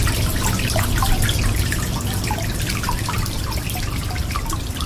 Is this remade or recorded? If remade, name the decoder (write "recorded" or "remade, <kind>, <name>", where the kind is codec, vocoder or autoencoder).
recorded